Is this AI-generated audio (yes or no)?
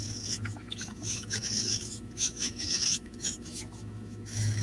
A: yes